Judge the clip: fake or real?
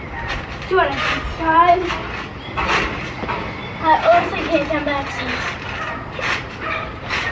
fake